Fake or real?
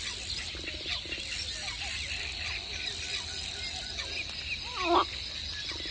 real